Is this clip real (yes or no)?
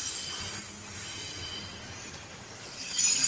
yes